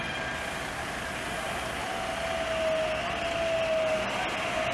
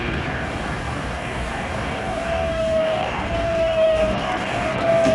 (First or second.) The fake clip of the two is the second